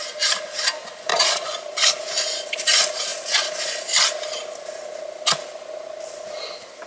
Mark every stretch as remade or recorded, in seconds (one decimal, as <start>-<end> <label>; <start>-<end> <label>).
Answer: 0.0-1.1 recorded; 1.1-1.9 remade; 1.9-6.9 recorded

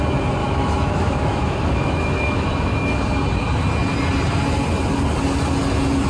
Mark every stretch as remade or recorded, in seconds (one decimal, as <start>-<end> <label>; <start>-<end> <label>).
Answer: 0.0-0.4 recorded; 0.4-3.0 remade; 3.0-6.1 recorded

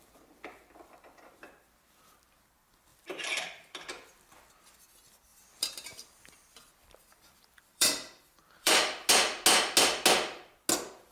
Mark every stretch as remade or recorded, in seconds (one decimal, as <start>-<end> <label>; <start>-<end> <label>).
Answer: 0.0-2.9 recorded; 2.9-4.4 remade; 4.4-5.3 recorded; 5.3-9.1 remade; 9.1-11.1 recorded

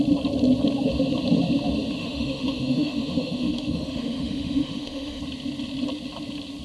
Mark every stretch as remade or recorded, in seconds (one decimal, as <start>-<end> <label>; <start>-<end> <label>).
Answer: 0.0-2.0 recorded; 2.0-5.2 remade; 5.2-6.6 recorded